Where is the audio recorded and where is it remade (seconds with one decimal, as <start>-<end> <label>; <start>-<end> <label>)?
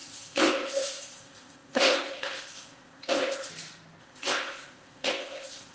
0.0-3.5 remade; 3.5-4.0 recorded; 4.0-5.7 remade